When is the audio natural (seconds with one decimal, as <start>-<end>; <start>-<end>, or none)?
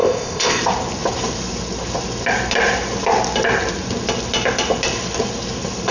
0.6-5.9